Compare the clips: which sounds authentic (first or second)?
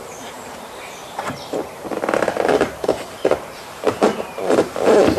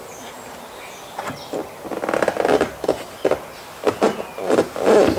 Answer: second